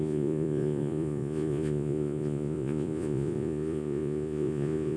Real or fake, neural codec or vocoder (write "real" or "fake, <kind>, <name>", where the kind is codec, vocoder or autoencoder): fake, vocoder, Vocos